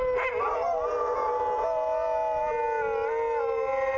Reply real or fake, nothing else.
real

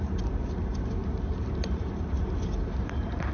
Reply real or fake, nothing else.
real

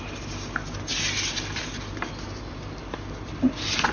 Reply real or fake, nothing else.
real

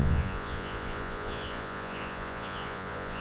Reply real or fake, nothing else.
fake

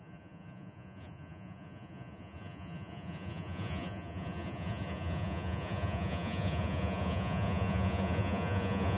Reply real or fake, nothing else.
fake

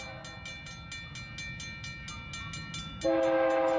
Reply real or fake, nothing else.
real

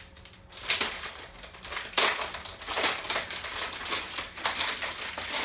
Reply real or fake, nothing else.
real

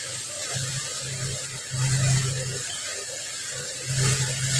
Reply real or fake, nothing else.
real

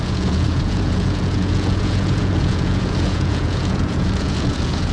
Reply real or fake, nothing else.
fake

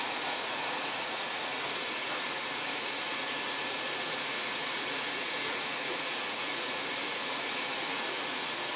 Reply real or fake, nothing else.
fake